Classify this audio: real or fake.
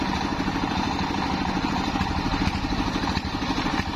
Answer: fake